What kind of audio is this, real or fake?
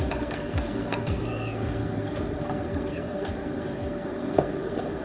fake